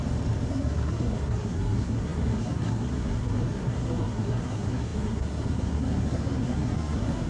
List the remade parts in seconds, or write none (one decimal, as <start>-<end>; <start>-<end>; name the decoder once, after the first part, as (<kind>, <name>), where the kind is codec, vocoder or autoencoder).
0.5-7.3 (codec, SNAC)